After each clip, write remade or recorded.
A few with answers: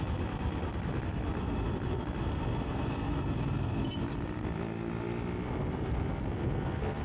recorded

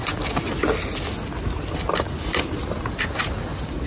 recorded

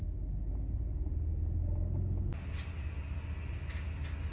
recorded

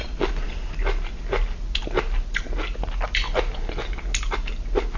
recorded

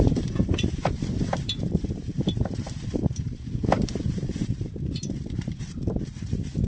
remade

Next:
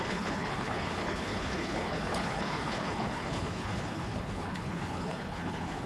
remade